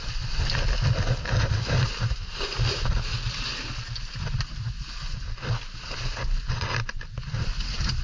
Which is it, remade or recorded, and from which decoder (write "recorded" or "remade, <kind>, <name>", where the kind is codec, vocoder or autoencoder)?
recorded